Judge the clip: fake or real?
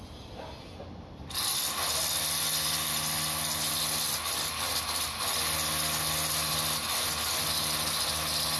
real